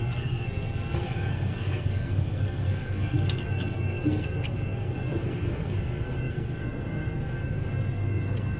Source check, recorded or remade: remade